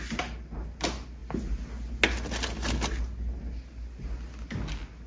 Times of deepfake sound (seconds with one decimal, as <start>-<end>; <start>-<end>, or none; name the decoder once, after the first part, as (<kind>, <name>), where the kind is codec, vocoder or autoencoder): none